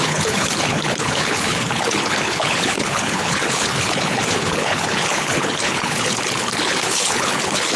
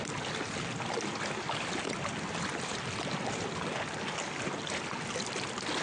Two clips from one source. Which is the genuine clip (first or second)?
second